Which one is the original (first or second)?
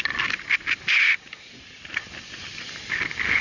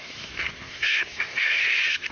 first